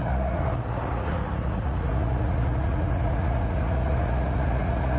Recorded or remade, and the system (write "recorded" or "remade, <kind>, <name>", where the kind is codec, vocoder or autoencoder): remade, vocoder, Vocos